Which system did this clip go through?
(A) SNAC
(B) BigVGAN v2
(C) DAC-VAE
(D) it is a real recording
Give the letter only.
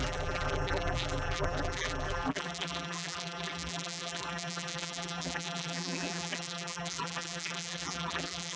B